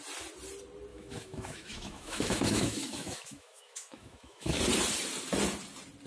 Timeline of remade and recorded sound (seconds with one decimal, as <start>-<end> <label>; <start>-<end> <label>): 0.0-0.9 recorded; 0.9-4.6 remade; 4.6-6.1 recorded